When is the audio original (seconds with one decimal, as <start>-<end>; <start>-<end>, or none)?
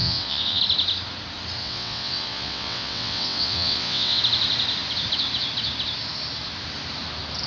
0.6-1.6; 4.2-7.5